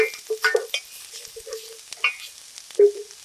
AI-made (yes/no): no